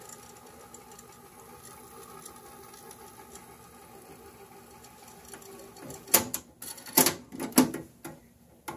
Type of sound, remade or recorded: recorded